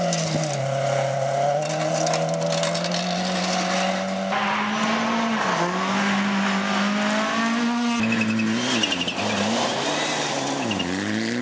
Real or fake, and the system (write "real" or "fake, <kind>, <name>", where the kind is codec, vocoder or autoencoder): real